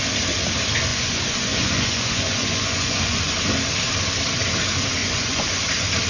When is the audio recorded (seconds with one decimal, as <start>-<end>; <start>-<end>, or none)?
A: 0.0-0.9; 3.3-5.0; 5.6-6.1